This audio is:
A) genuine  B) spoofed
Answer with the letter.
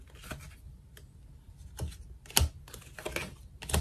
A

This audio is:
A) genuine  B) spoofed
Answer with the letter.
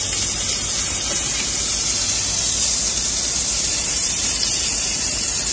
B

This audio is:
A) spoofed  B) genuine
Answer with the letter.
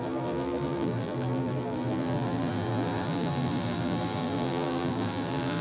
A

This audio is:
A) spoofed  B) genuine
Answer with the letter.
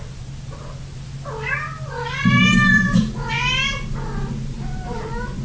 B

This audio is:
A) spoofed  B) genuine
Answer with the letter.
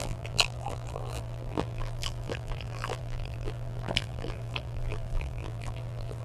A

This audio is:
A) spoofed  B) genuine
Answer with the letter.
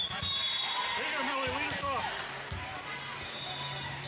B